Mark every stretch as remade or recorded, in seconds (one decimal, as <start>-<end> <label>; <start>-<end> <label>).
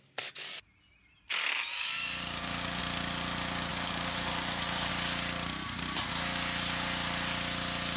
0.0-1.7 recorded; 1.7-2.8 remade; 2.8-3.7 recorded; 3.7-4.9 remade; 4.9-8.0 recorded